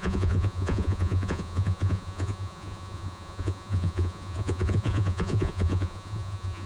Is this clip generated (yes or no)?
yes